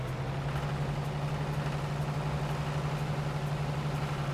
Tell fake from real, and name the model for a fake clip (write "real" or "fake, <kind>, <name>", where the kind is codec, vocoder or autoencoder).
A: real